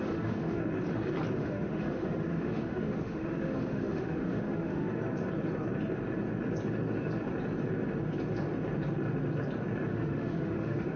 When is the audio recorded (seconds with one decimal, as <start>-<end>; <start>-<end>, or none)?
0.6-1.4; 4.8-9.9